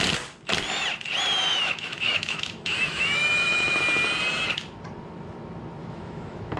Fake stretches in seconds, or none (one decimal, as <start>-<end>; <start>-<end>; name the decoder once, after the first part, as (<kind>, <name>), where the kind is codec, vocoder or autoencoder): 1.5-3.8 (autoencoder, DAC-VAE); 5.8-6.6